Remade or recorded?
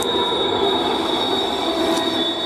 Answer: recorded